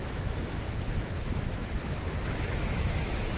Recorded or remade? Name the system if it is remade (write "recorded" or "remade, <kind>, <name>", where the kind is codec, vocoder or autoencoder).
remade, autoencoder, DAC-VAE